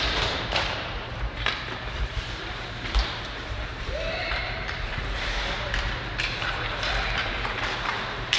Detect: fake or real fake